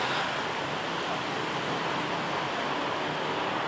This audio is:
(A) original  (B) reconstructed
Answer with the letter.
A